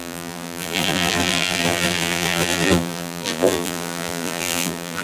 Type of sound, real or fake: fake